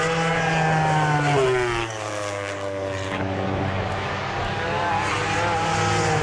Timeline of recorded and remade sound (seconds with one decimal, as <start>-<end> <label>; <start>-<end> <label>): 0.0-1.8 recorded; 1.8-4.9 remade; 4.9-6.2 recorded